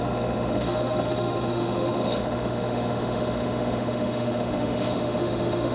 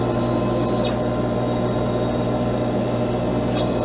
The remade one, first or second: first